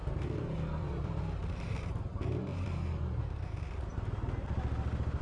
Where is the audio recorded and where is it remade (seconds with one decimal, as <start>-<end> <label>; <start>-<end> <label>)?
0.0-1.3 remade; 1.3-2.5 recorded; 2.5-3.2 remade; 3.2-5.2 recorded